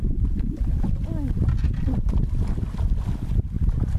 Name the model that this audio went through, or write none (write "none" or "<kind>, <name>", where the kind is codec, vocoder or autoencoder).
none